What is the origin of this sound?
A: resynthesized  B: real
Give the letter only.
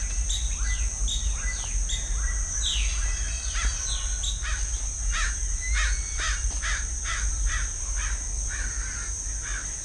B